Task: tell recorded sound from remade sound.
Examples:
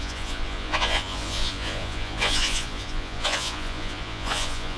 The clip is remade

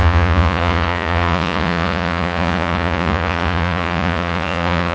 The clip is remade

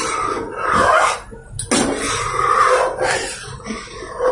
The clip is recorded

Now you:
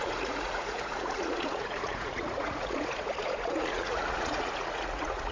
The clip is remade